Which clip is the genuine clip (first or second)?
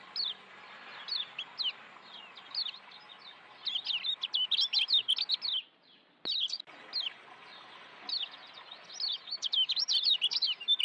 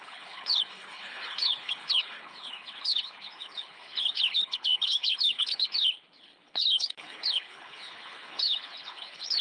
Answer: first